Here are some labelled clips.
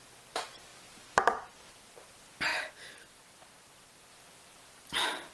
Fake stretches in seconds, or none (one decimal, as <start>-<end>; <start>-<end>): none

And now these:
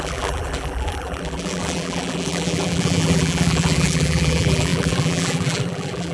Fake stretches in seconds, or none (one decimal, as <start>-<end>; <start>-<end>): 0.0-6.1

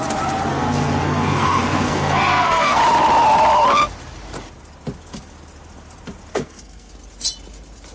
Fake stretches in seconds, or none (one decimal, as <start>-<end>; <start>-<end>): 0.5-2.8; 6.3-6.9